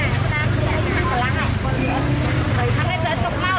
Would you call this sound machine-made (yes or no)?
no